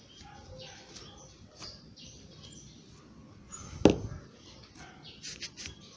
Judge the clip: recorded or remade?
recorded